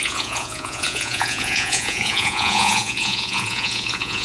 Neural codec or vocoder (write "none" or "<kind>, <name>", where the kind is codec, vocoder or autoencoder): vocoder, Vocos